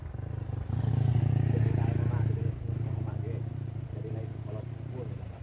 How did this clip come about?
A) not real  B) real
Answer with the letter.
B